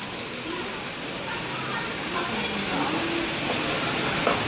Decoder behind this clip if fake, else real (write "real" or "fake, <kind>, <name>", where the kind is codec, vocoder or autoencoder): real